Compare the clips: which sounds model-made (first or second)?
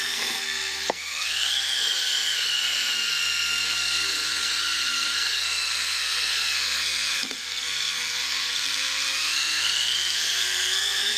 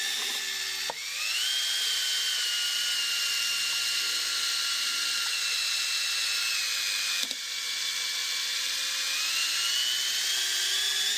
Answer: first